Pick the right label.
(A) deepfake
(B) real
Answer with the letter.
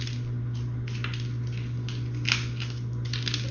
B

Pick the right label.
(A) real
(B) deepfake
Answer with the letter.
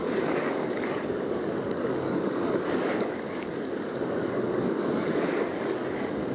B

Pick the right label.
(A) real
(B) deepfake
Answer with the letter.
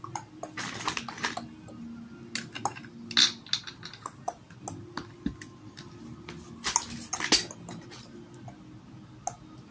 A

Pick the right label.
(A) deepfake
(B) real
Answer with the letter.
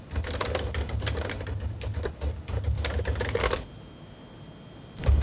B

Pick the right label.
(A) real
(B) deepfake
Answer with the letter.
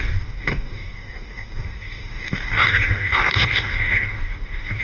B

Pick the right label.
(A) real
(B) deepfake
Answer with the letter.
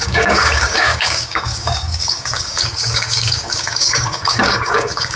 B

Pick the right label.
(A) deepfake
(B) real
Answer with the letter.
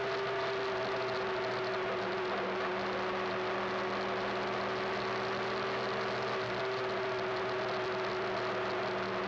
B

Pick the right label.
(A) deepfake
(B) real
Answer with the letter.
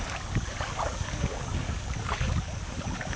A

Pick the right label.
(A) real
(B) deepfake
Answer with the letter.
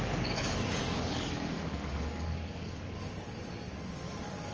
B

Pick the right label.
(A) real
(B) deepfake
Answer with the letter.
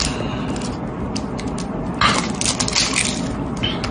A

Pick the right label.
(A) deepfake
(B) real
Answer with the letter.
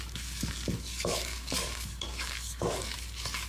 A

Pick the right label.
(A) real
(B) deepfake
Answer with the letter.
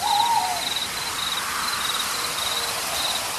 A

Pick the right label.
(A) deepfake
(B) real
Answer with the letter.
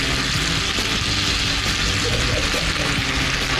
B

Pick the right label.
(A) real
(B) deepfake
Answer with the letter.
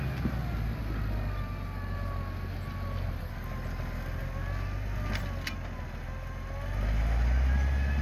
A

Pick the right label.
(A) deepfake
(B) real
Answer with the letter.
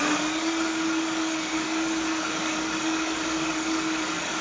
A